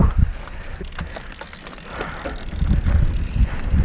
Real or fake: real